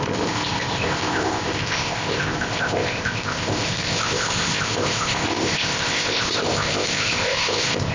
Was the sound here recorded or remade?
remade